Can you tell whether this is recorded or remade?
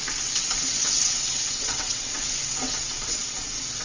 remade